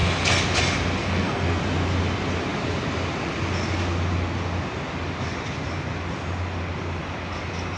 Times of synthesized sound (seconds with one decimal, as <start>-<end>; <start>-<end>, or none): 1.0-1.6